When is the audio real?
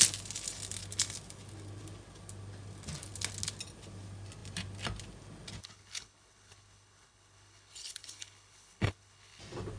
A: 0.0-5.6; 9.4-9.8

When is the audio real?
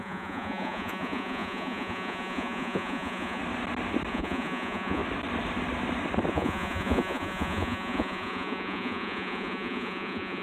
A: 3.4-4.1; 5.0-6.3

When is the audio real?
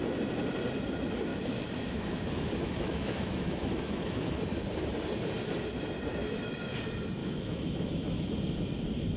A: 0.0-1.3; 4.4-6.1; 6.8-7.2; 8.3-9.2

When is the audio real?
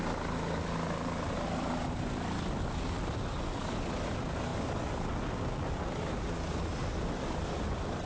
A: 0.0-8.1